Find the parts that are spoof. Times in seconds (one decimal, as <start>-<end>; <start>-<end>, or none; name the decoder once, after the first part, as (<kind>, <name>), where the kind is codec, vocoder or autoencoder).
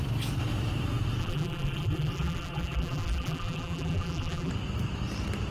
1.2-4.5 (vocoder, BigVGAN v2)